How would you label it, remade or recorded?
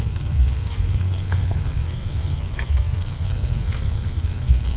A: remade